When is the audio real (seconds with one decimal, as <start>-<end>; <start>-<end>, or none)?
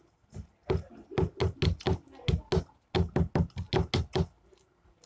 0.0-5.1